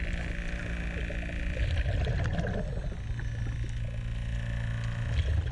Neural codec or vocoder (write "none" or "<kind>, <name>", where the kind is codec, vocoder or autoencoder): none